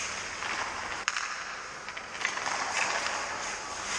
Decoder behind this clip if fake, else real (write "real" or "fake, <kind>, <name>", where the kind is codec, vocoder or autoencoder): real